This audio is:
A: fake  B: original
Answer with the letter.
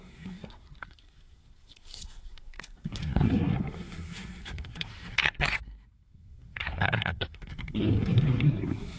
A